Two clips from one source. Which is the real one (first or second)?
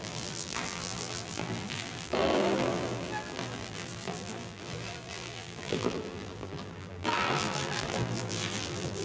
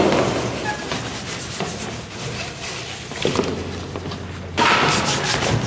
second